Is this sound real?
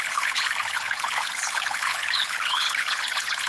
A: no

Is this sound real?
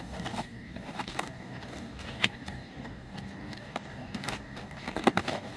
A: no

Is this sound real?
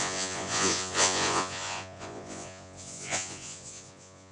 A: no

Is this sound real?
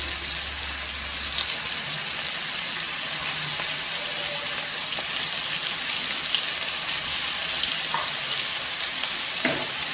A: yes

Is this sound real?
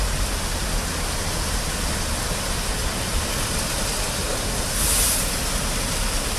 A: yes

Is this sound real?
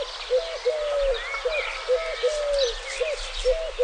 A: yes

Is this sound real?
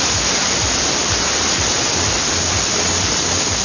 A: yes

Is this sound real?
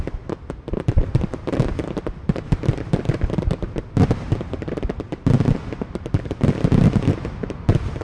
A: yes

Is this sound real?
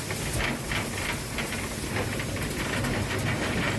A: yes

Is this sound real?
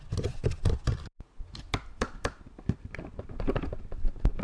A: yes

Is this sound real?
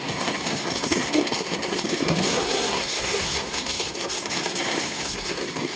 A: no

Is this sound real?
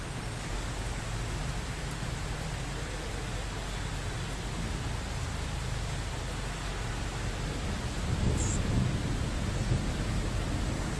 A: yes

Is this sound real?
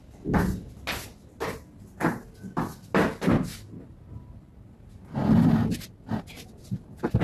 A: yes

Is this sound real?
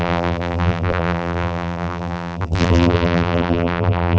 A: no